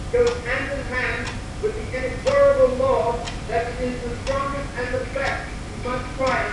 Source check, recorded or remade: recorded